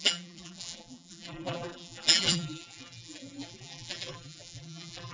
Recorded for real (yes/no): no